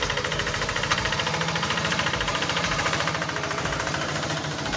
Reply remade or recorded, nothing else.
remade